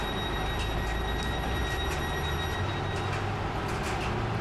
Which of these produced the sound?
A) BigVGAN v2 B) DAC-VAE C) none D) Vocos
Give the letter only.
C